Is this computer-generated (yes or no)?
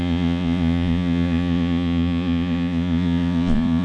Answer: yes